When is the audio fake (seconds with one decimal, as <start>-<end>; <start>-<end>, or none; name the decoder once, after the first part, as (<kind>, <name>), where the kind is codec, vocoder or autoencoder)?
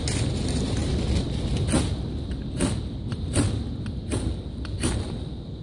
none